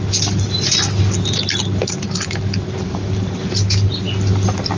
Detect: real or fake real